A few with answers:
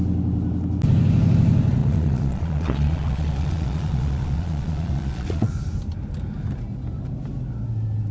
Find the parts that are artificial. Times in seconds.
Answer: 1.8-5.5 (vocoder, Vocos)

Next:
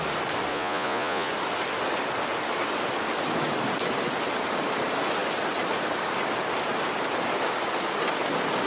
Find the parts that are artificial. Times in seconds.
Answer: 0.5-1.3 (vocoder, Vocos)